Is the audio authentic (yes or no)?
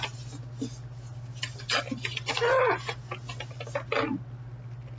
yes